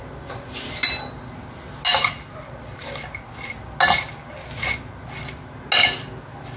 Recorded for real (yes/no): yes